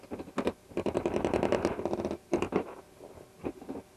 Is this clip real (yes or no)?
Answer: yes